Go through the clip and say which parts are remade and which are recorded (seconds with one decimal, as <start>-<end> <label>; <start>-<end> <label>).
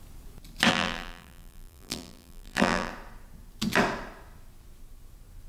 0.0-0.7 recorded; 0.7-2.9 remade; 2.9-5.5 recorded